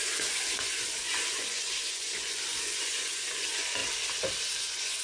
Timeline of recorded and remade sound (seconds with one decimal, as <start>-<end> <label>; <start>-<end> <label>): 0.0-3.8 remade; 3.8-4.6 recorded; 4.6-5.0 remade

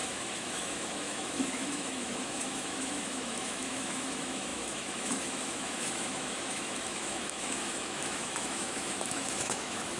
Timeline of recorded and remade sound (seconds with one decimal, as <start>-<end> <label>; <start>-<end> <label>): 0.0-10.0 remade

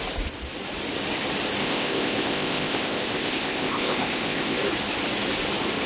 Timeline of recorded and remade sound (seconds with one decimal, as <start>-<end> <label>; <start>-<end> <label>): 0.0-1.6 recorded; 1.6-4.6 remade; 4.6-5.9 recorded

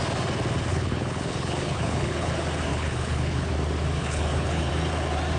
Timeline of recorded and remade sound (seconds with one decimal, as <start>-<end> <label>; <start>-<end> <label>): 0.0-0.7 recorded; 0.7-2.3 remade; 2.3-2.7 recorded; 2.7-3.5 remade; 3.5-4.0 recorded; 4.0-4.7 remade; 4.7-5.4 recorded

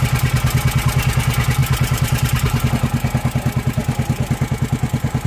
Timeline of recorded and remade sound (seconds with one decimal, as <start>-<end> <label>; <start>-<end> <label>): 0.0-1.6 recorded; 1.6-2.7 remade; 2.7-5.3 recorded

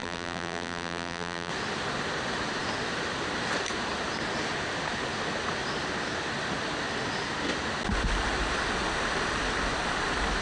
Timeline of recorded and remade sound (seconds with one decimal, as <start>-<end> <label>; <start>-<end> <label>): 0.0-1.5 remade; 1.5-10.4 recorded